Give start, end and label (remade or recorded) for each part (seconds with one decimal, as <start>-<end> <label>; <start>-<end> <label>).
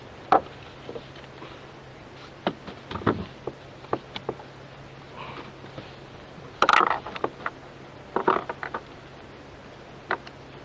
0.0-10.6 recorded